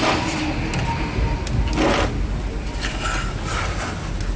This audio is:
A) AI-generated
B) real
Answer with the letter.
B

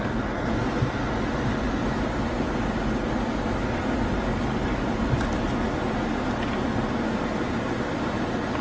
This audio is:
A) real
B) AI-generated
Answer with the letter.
A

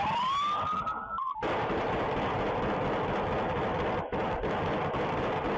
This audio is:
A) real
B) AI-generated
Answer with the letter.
A